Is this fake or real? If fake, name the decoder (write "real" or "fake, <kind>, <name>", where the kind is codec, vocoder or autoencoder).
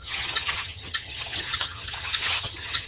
fake, vocoder, HiFi-GAN